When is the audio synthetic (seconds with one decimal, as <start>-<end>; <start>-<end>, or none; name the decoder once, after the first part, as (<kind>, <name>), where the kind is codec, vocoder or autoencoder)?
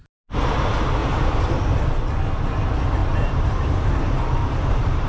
1.0-1.6 (vocoder, BigVGAN v2); 3.0-5.1